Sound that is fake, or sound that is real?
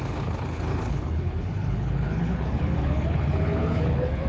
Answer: fake